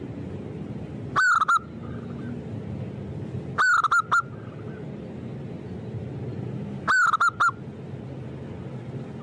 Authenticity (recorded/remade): recorded